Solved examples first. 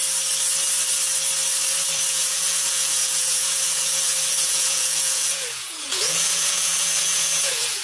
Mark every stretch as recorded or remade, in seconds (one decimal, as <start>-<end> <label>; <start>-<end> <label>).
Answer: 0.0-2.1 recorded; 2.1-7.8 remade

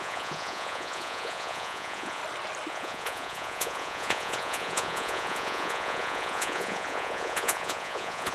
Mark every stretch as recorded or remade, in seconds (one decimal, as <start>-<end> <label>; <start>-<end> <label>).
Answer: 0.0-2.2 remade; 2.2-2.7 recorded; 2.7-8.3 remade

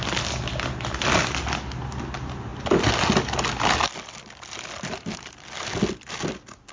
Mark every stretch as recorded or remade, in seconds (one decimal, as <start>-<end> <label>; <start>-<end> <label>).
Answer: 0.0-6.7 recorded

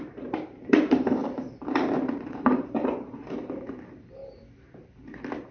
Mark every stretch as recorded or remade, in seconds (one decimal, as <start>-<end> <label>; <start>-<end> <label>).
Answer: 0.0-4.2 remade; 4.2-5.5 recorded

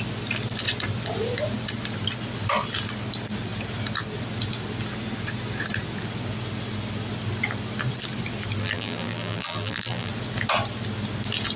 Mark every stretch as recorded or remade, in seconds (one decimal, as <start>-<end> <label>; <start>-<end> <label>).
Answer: 0.0-8.6 recorded; 8.6-10.1 remade; 10.1-11.6 recorded